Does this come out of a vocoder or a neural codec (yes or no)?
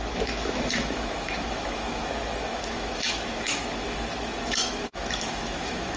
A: yes